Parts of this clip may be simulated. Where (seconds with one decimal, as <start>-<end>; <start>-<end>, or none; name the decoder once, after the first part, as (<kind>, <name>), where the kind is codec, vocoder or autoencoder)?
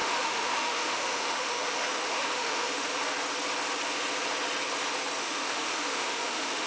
0.0-2.9 (autoencoder, DAC-VAE); 5.2-6.7